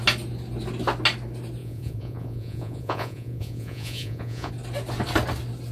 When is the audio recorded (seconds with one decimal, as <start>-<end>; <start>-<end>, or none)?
0.0-1.6; 4.5-5.7

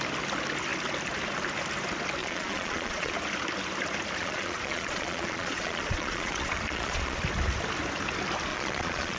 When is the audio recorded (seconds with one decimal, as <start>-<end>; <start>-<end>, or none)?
0.0-2.2; 3.1-4.2; 7.2-8.5

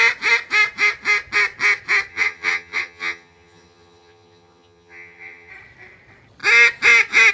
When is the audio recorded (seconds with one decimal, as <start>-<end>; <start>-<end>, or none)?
0.0-2.1; 5.5-7.3

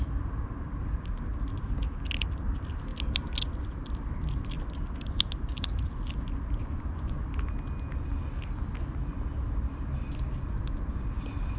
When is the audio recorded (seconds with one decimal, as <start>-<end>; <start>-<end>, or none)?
0.0-6.6; 7.2-11.6

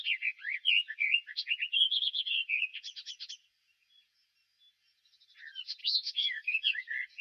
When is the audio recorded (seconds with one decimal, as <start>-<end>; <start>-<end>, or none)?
0.0-5.8; 6.6-7.2

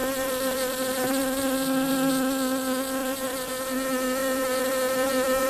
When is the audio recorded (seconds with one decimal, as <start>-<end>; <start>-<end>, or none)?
2.1-3.0; 3.5-4.2

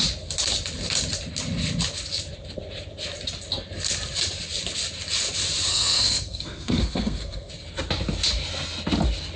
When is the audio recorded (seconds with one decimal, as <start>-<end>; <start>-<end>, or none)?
0.0-5.7; 7.5-9.4